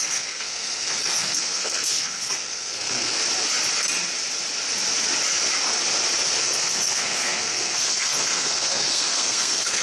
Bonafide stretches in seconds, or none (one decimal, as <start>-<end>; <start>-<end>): 3.2-6.4